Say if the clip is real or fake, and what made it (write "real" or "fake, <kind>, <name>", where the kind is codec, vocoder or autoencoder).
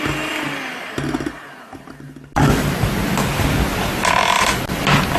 real